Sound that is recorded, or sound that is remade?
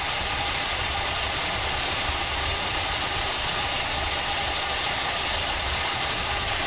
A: remade